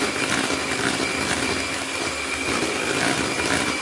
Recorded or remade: recorded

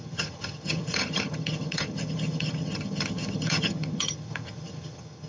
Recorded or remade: remade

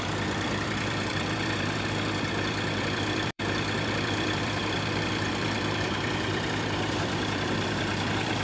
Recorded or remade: remade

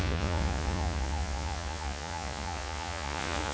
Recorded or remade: remade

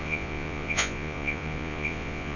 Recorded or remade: remade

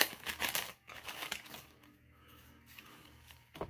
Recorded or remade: remade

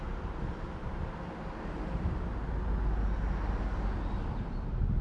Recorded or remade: recorded